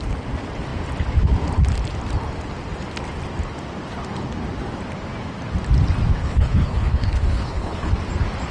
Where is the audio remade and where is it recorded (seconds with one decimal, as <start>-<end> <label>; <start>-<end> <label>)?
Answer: 0.0-6.2 recorded; 6.2-7.9 remade; 7.9-8.5 recorded